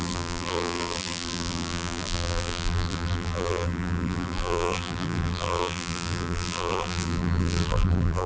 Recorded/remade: remade